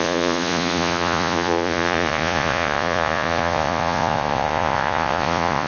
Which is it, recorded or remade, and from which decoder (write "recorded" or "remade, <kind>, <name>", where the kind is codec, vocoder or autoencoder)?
remade, vocoder, Vocos